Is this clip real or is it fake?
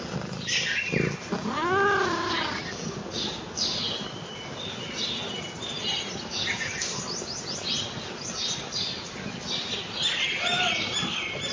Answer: real